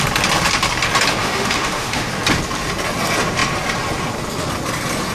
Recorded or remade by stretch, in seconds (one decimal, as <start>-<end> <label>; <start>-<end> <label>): 0.0-1.2 recorded; 1.2-2.1 remade; 2.1-5.1 recorded